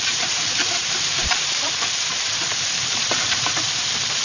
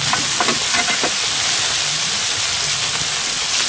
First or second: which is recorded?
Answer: second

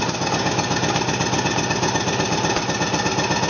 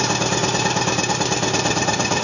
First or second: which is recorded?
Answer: first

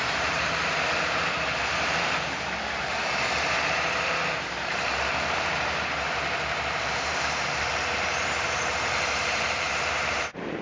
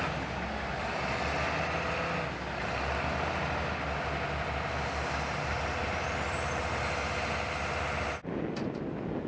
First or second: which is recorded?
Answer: second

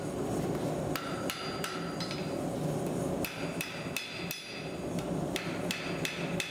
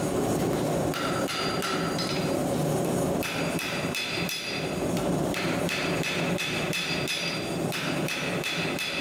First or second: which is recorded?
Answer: first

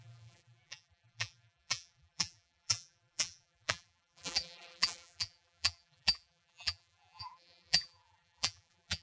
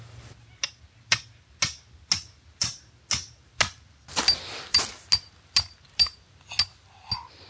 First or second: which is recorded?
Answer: second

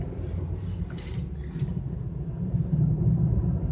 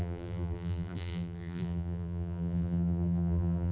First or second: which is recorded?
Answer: first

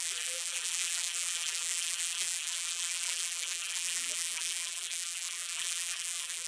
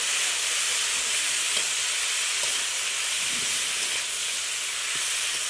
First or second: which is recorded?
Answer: second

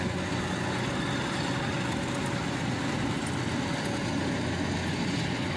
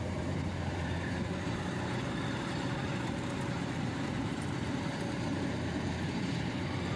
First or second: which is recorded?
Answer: first